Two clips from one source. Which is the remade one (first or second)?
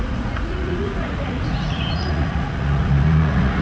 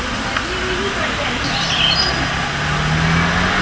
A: first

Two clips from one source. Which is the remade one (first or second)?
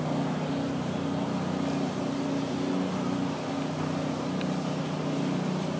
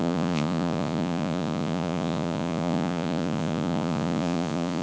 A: second